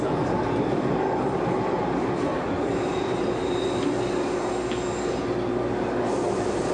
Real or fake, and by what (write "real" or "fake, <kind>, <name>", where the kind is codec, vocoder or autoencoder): real